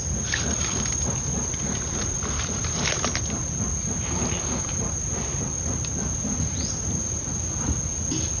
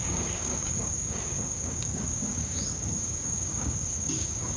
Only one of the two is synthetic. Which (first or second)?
second